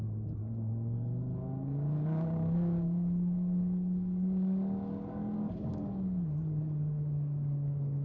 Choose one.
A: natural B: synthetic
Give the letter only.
B